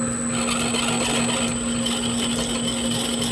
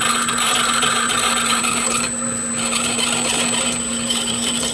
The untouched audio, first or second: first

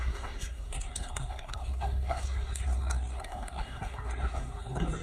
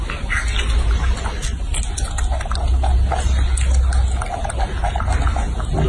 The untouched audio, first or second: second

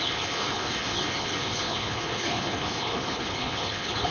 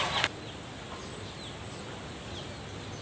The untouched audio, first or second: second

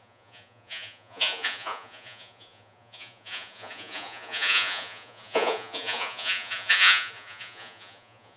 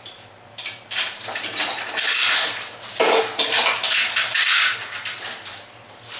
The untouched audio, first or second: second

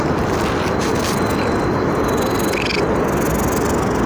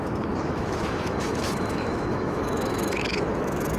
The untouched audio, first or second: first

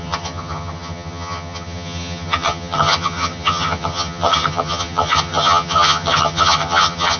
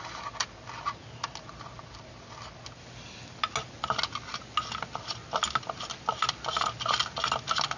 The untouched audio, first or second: second